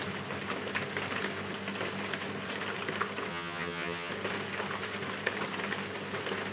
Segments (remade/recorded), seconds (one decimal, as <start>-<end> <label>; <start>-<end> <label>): 0.0-3.3 recorded; 3.3-4.1 remade; 4.1-6.5 recorded